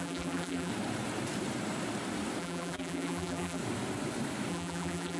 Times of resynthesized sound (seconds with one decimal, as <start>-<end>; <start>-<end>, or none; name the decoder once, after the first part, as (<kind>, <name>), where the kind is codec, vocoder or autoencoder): 0.0-0.7 (vocoder, BigVGAN v2); 2.4-3.6; 4.5-5.2